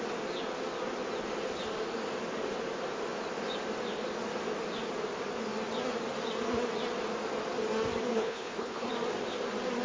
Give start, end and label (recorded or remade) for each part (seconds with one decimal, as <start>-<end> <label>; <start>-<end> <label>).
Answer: 0.0-8.1 recorded; 8.1-8.9 remade; 8.9-9.8 recorded